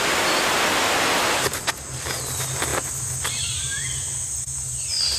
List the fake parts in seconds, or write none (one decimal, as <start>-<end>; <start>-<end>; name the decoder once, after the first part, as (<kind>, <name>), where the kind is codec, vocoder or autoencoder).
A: none